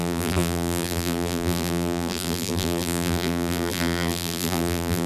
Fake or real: fake